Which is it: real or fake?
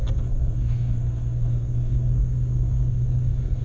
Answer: fake